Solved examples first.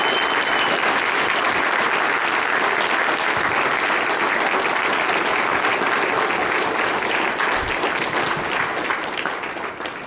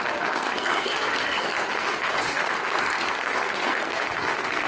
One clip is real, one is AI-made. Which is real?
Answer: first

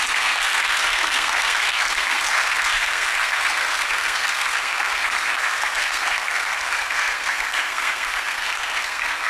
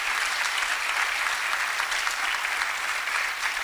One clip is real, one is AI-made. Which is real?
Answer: second